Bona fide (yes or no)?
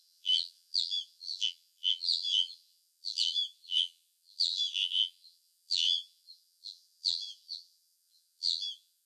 no